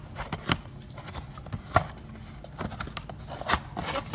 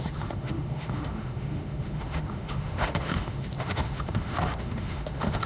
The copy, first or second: second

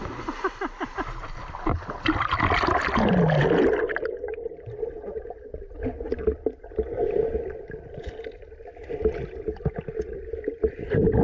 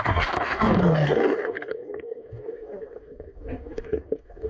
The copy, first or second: second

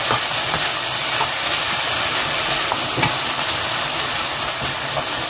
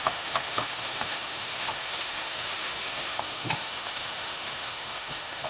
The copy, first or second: second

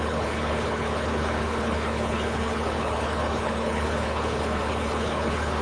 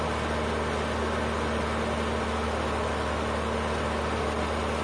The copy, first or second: first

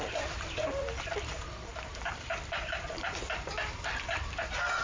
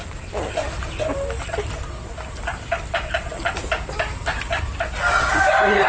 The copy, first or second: first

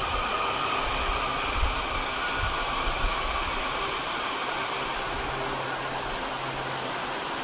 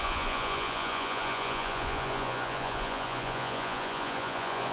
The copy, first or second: second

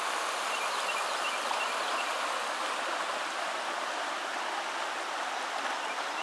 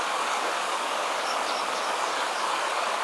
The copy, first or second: second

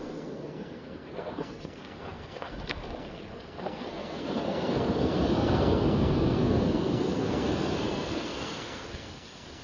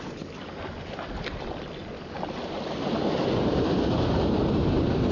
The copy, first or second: first